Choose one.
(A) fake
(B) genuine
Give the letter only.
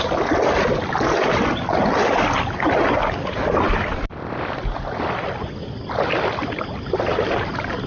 B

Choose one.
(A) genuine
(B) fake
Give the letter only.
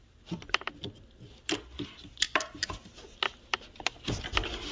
A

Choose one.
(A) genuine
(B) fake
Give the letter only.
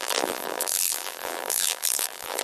B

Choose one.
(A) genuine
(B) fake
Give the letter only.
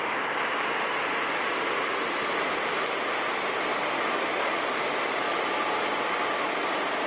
A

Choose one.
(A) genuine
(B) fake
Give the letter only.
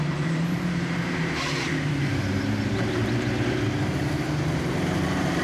B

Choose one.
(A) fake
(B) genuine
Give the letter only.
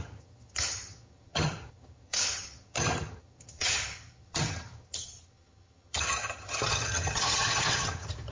A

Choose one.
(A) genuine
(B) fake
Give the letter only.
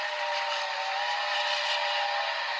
A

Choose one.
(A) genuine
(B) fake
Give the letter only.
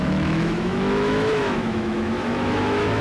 B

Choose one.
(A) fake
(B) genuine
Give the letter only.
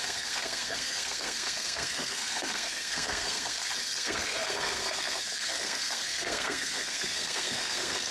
A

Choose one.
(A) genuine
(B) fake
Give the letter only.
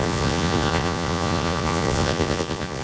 B